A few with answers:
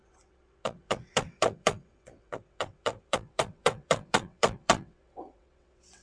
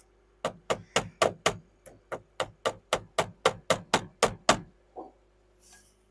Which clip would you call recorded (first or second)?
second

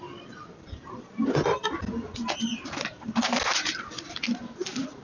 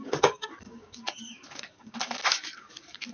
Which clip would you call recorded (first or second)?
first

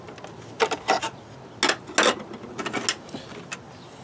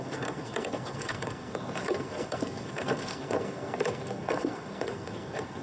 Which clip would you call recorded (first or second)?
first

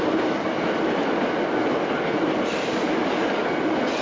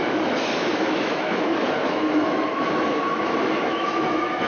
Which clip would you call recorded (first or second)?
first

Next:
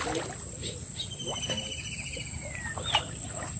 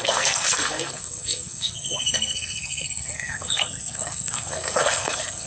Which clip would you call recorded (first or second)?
first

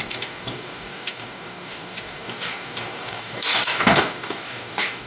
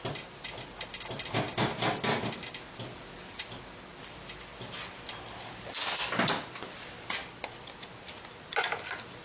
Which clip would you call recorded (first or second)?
second